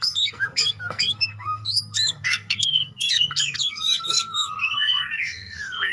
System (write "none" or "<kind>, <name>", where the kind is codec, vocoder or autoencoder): codec, SNAC